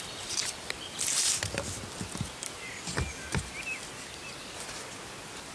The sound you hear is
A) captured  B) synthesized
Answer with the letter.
A